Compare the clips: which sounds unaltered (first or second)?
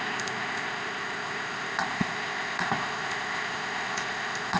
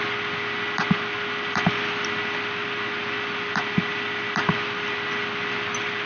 second